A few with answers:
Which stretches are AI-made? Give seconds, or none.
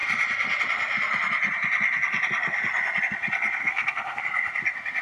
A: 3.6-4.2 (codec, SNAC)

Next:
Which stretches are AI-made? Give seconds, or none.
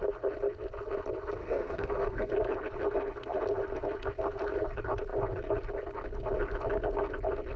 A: 1.4-2.3 (codec, SNAC)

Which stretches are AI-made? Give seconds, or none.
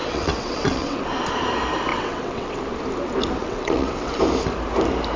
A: 0.0-1.0 (vocoder, WaveNeXt); 1.9-2.6; 3.4-4.1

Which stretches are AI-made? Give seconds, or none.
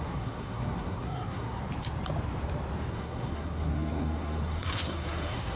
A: 0.0-1.6 (codec, SNAC); 2.9-5.6